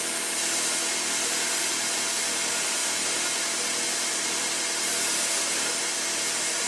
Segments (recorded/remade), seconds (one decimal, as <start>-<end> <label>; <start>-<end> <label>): 0.0-6.7 recorded